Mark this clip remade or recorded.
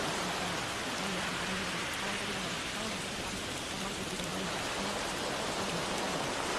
recorded